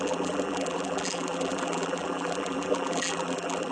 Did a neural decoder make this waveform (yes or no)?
yes